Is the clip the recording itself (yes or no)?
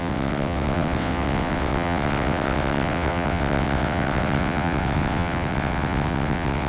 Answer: no